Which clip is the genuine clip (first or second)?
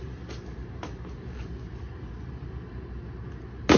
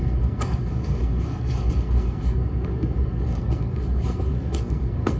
first